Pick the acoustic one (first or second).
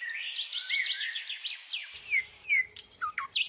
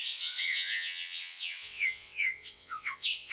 first